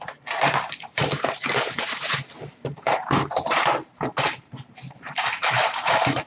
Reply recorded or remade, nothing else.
remade